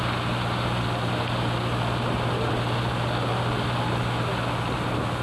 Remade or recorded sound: recorded